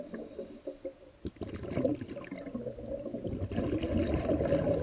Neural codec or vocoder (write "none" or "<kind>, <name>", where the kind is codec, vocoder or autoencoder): none